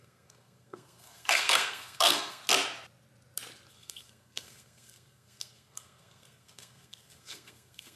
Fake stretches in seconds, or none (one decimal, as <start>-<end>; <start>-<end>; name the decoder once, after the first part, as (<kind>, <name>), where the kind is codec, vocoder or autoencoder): 0.0-2.4 (codec, SNAC); 3.7-8.0